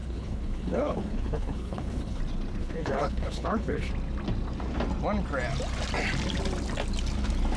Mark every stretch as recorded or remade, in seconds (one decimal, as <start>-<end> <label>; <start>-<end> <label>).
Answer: 0.0-2.2 remade; 2.2-2.6 recorded; 2.6-3.9 remade; 3.9-7.6 recorded